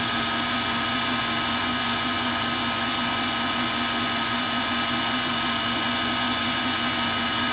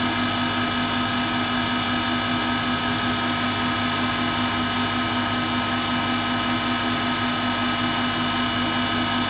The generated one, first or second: first